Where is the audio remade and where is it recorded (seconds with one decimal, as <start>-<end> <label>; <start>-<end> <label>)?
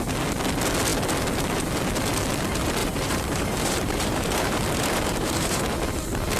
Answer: 0.0-2.8 recorded; 2.8-5.6 remade; 5.6-6.4 recorded